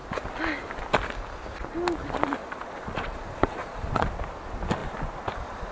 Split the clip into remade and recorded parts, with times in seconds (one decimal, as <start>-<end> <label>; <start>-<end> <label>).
0.0-2.4 recorded; 2.4-4.1 remade; 4.1-5.7 recorded